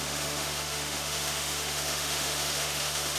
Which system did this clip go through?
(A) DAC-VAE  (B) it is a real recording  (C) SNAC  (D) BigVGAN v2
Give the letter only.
A